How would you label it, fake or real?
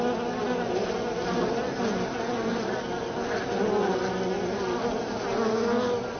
real